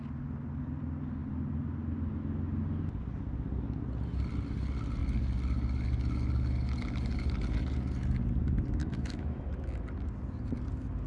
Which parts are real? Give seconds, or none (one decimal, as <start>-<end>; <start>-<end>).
0.0-8.8; 9.4-11.1